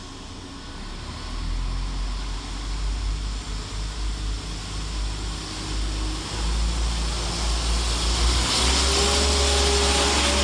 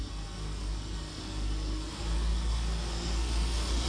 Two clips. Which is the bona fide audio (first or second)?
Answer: first